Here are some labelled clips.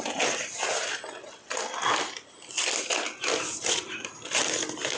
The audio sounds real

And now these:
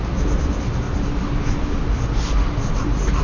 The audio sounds real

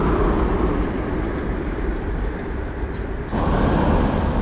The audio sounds fake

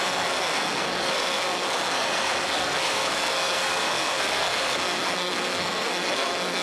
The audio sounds fake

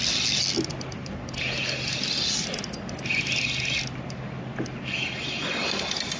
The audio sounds real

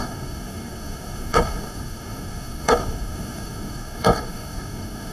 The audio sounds fake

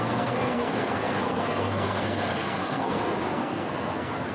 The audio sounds fake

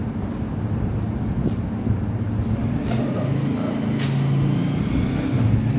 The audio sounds real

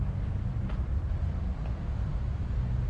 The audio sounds real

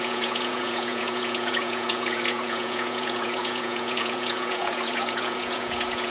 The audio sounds fake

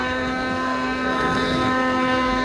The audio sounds fake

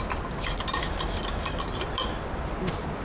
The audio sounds real